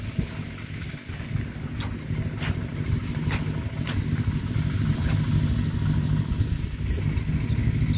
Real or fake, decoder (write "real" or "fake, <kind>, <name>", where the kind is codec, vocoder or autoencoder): real